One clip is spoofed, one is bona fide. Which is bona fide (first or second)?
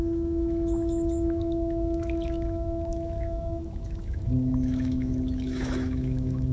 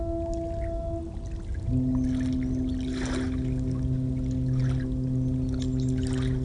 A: second